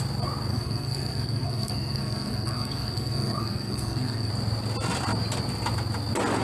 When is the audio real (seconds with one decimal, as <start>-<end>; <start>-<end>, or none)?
0.0-0.5; 4.3-6.4